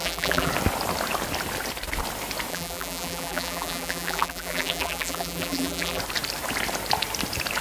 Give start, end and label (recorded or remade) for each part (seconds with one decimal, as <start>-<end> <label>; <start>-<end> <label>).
0.0-0.5 remade; 0.5-2.5 recorded; 2.5-6.0 remade; 6.0-7.6 recorded